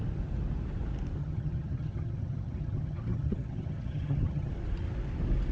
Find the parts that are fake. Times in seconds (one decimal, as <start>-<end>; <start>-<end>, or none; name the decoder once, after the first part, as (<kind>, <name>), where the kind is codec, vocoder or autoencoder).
1.2-4.5 (vocoder, HiFi-GAN)